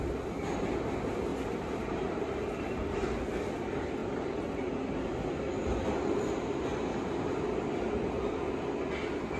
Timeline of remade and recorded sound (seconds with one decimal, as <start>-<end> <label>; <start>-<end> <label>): 0.0-1.3 recorded; 1.3-3.2 remade; 3.2-4.0 recorded; 4.0-4.7 remade; 4.7-9.4 recorded